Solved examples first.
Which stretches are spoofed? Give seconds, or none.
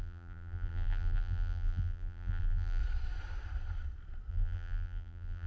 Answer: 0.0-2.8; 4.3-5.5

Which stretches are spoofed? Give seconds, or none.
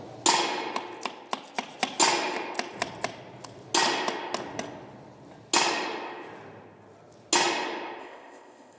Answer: 8.0-8.8